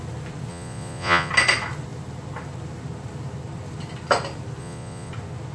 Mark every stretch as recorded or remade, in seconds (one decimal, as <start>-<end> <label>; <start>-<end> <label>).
0.0-0.5 recorded; 0.5-1.3 remade; 1.3-4.6 recorded; 4.6-5.1 remade; 5.1-5.5 recorded